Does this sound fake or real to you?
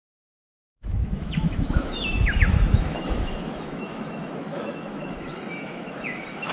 fake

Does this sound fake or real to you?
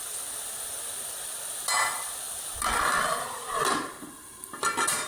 real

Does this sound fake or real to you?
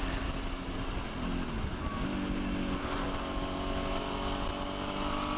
real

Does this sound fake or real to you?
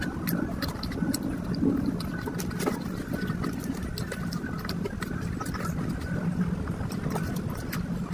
real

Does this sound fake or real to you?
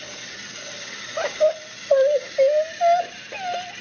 real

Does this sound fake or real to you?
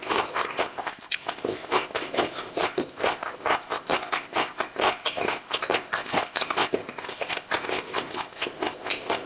fake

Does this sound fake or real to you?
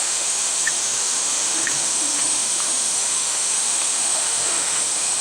fake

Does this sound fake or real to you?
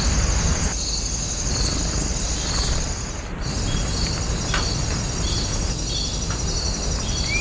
real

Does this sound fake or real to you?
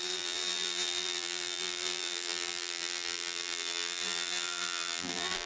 fake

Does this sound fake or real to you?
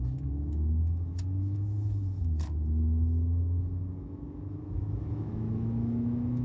fake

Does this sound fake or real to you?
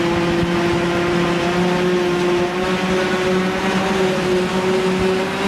real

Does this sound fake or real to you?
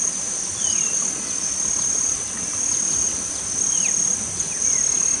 real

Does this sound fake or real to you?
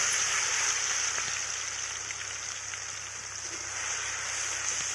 real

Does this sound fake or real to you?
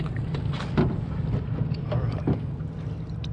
real